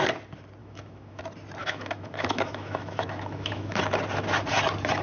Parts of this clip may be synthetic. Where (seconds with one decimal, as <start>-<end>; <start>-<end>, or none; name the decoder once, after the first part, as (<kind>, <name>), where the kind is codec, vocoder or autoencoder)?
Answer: 0.6-1.2 (autoencoder, DAC-VAE); 1.6-3.8